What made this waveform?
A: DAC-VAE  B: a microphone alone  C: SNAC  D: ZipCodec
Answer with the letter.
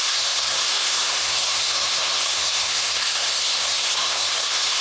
C